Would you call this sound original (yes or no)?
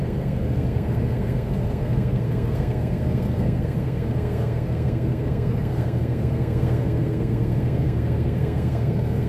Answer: no